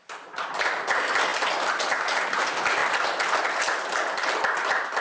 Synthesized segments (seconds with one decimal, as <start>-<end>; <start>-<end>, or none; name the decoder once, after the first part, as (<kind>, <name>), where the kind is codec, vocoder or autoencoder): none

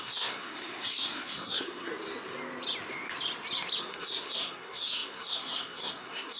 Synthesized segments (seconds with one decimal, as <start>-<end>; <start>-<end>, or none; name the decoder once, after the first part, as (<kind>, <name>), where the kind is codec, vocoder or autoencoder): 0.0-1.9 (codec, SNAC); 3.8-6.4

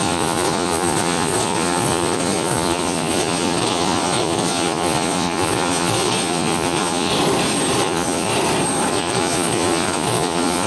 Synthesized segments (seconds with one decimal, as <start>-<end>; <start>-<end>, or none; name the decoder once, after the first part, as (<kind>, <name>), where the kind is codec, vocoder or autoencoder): 0.0-7.1 (vocoder, Vocos); 7.8-8.3; 8.9-10.7

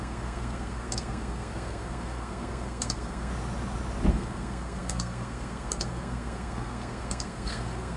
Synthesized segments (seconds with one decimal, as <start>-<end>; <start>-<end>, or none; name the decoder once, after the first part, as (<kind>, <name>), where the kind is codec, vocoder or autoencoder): 0.0-3.3 (codec, SNAC); 4.1-8.0